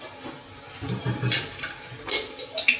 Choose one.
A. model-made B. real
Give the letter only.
B